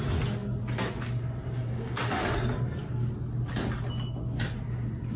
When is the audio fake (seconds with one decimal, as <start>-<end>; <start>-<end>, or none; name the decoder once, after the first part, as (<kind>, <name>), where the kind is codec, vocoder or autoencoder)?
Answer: 1.6-2.1 (codec, DAC)